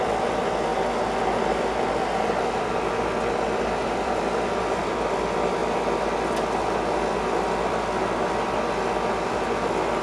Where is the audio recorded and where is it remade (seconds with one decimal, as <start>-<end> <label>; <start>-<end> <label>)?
0.0-3.8 recorded; 3.8-4.8 remade; 4.8-10.0 recorded